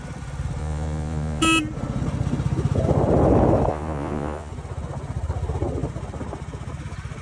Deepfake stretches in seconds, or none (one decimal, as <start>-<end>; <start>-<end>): 0.6-1.4; 3.7-4.5